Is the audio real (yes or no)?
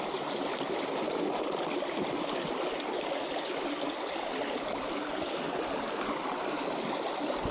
yes